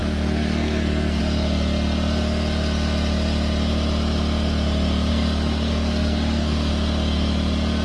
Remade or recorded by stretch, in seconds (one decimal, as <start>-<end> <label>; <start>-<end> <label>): 0.0-1.2 remade; 1.2-5.1 recorded; 5.1-6.7 remade; 6.7-7.8 recorded

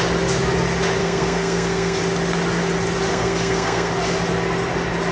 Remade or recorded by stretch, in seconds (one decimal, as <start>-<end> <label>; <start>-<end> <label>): 0.0-1.0 recorded; 1.0-2.0 remade; 2.0-3.1 recorded; 3.1-3.9 remade; 3.9-5.1 recorded

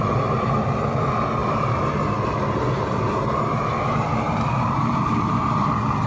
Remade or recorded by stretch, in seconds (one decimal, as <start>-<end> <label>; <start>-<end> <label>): 0.0-0.8 remade; 0.8-1.4 recorded; 1.4-2.0 remade; 2.0-4.5 recorded; 4.5-5.3 remade; 5.3-6.1 recorded

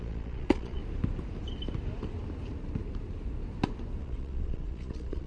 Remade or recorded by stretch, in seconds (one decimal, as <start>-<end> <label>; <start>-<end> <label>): 0.0-0.8 remade; 0.8-4.0 recorded; 4.0-5.3 remade

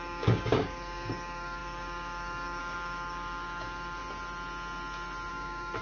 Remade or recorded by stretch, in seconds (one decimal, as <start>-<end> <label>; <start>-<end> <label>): 0.0-4.0 remade; 4.0-5.3 recorded; 5.3-5.8 remade

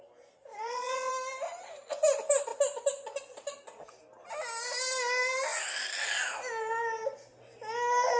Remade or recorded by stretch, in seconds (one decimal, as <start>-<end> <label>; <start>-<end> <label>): 0.0-0.5 recorded; 0.5-1.1 remade; 1.1-8.2 recorded